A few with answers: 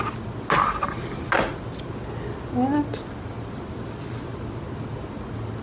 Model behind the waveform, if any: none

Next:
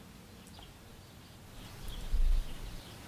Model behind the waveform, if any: none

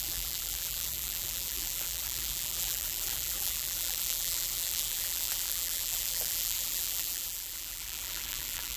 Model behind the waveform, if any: vocoder, BigVGAN v2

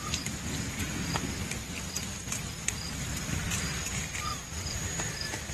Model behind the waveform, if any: vocoder, BigVGAN v2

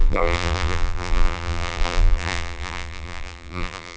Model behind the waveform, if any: vocoder, BigVGAN v2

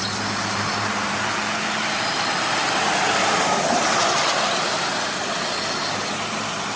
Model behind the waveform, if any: vocoder, BigVGAN v2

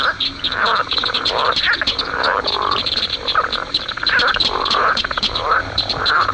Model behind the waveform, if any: vocoder, BigVGAN v2